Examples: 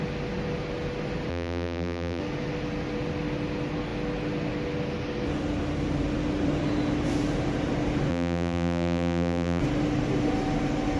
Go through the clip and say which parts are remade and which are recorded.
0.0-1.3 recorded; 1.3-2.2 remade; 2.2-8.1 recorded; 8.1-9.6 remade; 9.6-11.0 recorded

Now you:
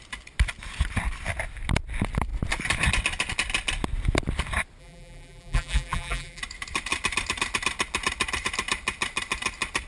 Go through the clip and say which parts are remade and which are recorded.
0.0-4.8 recorded; 4.8-6.4 remade; 6.4-9.9 recorded